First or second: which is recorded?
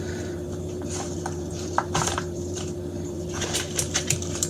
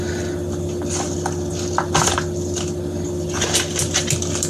second